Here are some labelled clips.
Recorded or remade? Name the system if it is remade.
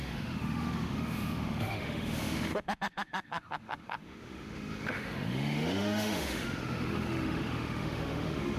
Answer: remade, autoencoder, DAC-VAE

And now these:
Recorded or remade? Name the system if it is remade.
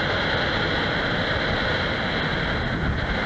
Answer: recorded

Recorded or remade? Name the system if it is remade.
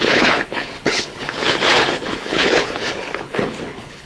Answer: remade, codec, HILCodec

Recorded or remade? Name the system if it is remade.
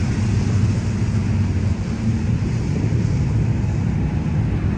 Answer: recorded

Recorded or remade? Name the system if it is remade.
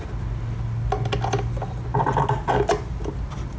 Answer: recorded